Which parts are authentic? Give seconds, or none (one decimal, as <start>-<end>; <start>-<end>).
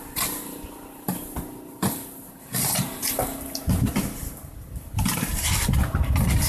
0.0-6.5